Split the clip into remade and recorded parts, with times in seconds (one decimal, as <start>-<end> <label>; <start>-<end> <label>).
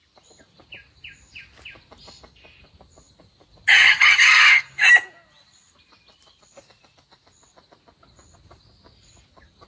0.0-3.7 recorded; 3.7-4.6 remade; 4.6-9.7 recorded